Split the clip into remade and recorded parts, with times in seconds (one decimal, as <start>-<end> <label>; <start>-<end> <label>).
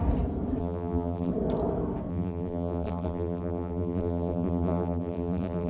0.0-0.6 recorded; 0.6-1.3 remade; 1.3-2.1 recorded; 2.1-5.7 remade